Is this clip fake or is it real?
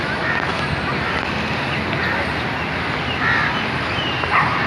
real